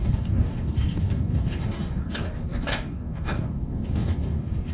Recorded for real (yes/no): no